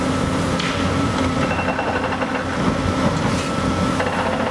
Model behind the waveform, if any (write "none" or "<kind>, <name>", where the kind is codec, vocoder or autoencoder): none